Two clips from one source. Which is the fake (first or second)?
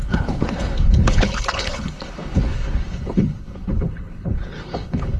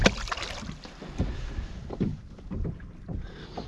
first